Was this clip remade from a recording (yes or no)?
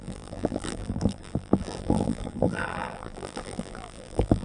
yes